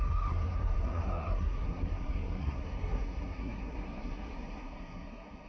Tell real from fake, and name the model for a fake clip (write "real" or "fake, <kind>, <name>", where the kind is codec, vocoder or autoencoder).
fake, codec, SNAC